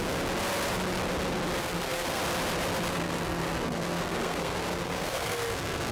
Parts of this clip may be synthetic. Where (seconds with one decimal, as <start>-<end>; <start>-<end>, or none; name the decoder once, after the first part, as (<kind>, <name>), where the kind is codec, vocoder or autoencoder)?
1.6-2.2 (codec, SNAC); 2.9-5.9